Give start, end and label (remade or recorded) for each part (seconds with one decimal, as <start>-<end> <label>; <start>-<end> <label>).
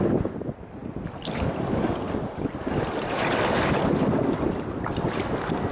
0.0-5.7 recorded